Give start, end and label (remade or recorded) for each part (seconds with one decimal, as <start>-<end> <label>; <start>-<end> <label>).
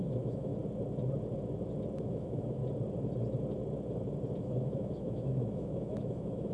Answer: 0.0-0.5 remade; 0.5-2.0 recorded; 2.0-2.6 remade; 2.6-4.4 recorded; 4.4-6.5 remade